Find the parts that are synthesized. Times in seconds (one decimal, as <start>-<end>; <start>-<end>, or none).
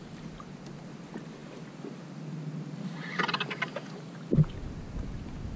none